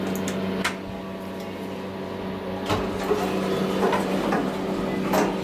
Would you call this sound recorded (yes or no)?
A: yes